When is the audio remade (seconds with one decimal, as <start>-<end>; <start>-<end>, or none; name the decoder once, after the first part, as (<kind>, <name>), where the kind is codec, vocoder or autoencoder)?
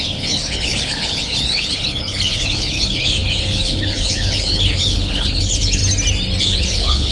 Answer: 0.0-5.8 (codec, HILCodec); 6.4-7.1